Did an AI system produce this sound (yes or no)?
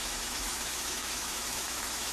yes